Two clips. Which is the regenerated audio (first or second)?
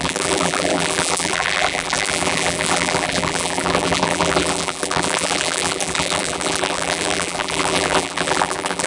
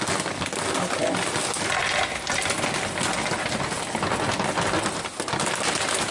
first